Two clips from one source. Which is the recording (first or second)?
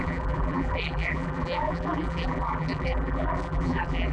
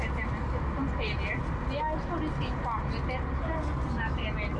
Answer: second